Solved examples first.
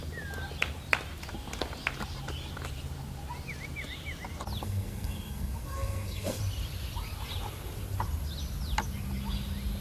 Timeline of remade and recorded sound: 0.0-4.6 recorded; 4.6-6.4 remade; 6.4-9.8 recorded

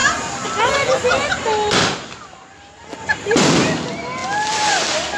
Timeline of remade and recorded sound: 0.0-5.2 recorded

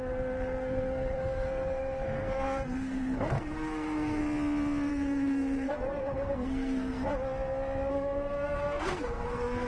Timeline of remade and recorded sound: 0.0-4.2 remade; 4.2-4.9 recorded; 4.9-7.1 remade; 7.1-7.9 recorded; 7.9-9.7 remade

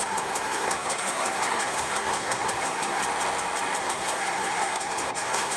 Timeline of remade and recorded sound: 0.0-3.0 remade; 3.0-3.8 recorded; 3.8-5.6 remade

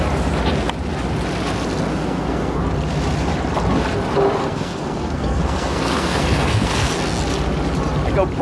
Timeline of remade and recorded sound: 0.0-1.9 recorded; 1.9-2.6 remade; 2.6-4.4 recorded; 4.4-6.9 remade; 6.9-8.4 recorded